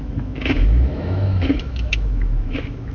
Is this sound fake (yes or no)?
yes